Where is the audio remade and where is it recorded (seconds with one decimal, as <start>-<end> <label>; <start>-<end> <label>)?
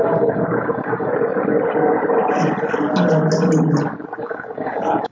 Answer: 0.0-1.1 remade; 1.1-4.2 recorded; 4.2-5.1 remade